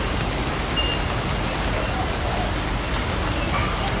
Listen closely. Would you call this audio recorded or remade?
recorded